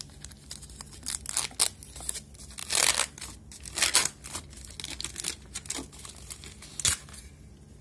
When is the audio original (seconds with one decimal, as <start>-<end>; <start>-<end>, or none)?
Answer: 0.0-7.8

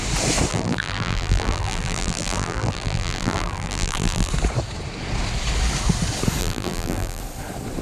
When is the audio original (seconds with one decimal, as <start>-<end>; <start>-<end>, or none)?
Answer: 0.0-0.5; 4.3-6.4; 7.2-7.8

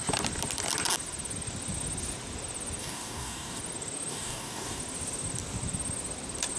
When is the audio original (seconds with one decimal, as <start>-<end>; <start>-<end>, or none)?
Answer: 0.0-2.8; 3.6-4.1; 4.8-6.6

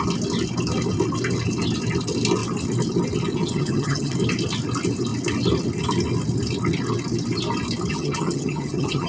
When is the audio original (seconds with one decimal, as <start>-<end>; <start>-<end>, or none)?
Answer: 0.0-3.3; 4.1-7.9

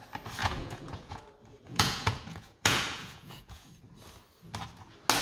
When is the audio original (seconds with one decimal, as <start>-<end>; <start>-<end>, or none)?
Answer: 0.0-0.4; 1.2-1.7; 3.7-5.2

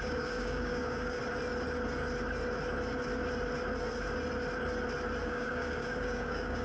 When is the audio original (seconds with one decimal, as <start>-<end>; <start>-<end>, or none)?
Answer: 1.2-5.2

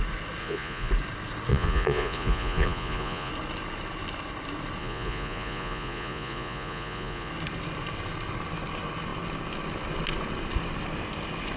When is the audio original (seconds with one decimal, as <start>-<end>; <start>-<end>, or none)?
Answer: 0.0-0.4; 0.9-1.5; 3.3-4.8; 7.3-11.6

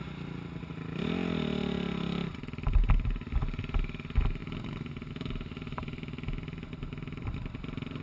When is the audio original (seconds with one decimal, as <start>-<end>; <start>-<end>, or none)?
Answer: 0.0-8.0